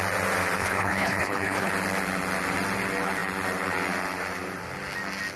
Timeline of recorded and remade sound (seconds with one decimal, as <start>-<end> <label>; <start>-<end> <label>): 0.0-0.6 recorded; 0.6-1.7 remade; 1.7-5.4 recorded

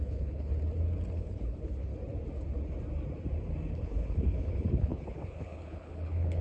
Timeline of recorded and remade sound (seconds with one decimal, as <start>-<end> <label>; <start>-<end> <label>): 0.0-0.5 remade; 0.5-1.1 recorded; 1.1-1.9 remade; 1.9-3.7 recorded; 3.7-6.4 remade

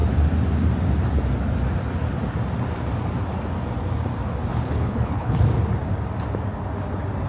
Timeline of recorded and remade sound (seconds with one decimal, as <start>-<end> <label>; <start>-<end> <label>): 0.0-4.5 recorded; 4.5-5.4 remade; 5.4-7.3 recorded

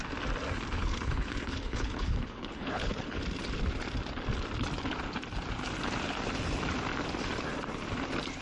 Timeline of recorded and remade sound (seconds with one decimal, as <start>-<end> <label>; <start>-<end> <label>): 0.0-0.8 recorded; 0.8-3.2 remade; 3.2-8.4 recorded

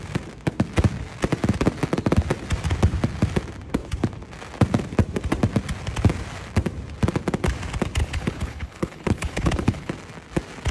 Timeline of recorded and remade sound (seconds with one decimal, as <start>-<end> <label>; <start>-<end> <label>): 0.0-8.0 recorded; 8.0-9.9 remade; 9.9-10.7 recorded